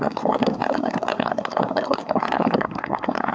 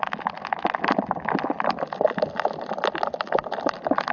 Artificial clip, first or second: first